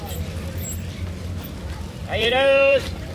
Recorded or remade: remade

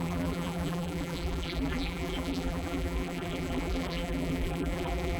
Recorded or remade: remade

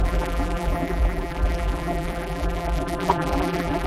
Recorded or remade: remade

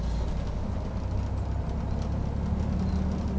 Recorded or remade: recorded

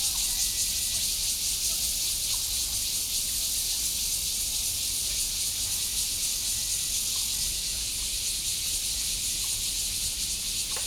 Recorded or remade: recorded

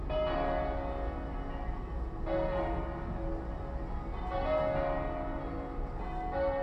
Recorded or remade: recorded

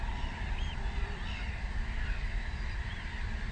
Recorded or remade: remade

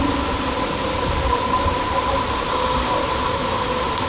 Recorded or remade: remade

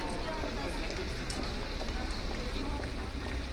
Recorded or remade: recorded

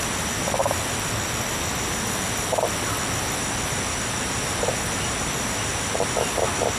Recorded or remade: recorded